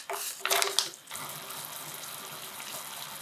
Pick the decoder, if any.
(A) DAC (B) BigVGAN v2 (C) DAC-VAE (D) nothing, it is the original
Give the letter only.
D